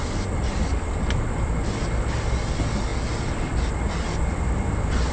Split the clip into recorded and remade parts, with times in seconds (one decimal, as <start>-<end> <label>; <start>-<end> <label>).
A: 0.0-5.1 recorded